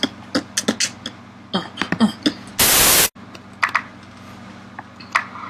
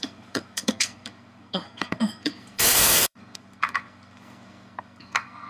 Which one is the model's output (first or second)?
second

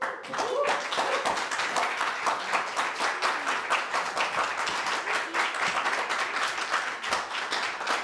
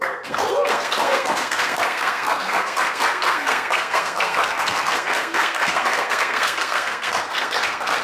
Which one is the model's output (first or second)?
second